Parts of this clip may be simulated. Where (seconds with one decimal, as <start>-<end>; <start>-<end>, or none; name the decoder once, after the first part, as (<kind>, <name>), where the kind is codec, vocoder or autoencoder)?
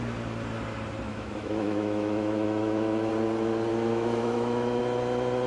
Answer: 1.1-3.1 (autoencoder, DAC-VAE); 3.7-4.8